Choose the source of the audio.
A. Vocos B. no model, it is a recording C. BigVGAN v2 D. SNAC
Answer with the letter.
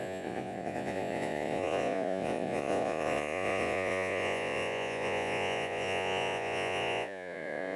A